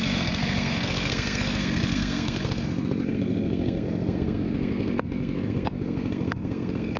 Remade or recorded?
remade